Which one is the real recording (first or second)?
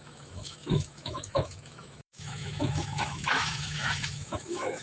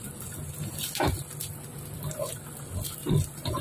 second